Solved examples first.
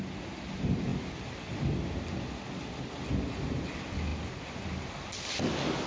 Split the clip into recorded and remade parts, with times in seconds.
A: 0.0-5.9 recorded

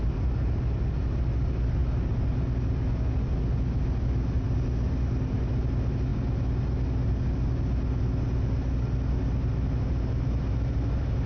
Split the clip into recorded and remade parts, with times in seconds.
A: 0.0-11.3 recorded

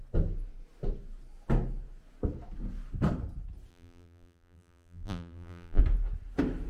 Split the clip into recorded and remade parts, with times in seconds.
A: 0.0-3.7 recorded; 3.7-5.8 remade; 5.8-6.7 recorded